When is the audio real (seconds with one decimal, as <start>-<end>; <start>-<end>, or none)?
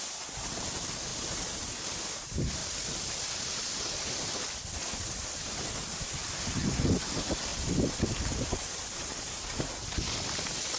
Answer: 0.0-2.6; 6.7-10.8